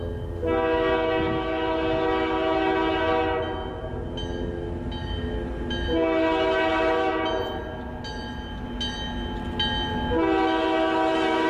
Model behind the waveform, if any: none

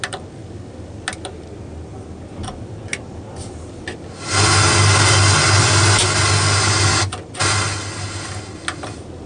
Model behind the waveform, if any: none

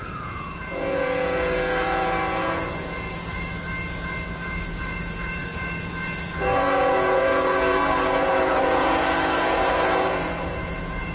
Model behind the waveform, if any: vocoder, Vocos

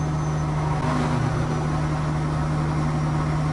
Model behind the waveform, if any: none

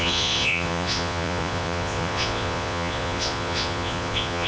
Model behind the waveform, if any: vocoder, Vocos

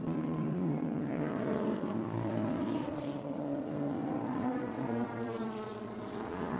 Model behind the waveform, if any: vocoder, Vocos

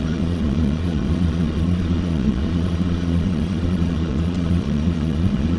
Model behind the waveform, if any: vocoder, Vocos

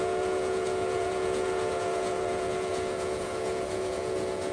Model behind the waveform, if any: vocoder, Vocos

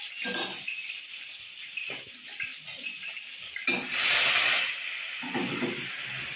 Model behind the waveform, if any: none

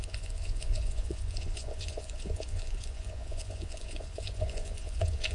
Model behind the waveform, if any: vocoder, Vocos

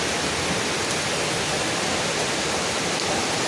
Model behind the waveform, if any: none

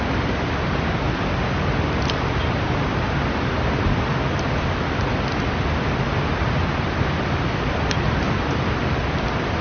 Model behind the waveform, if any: none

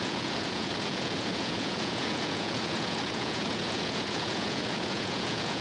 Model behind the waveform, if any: vocoder, Vocos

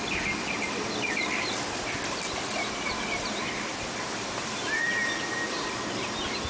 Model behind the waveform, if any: none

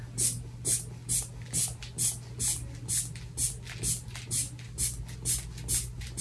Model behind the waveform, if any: none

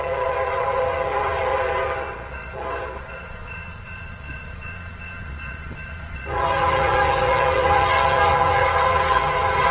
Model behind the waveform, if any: vocoder, Vocos